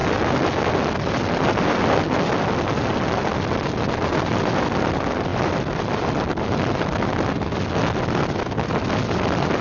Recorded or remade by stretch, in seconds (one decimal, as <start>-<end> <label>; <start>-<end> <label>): 0.0-9.6 recorded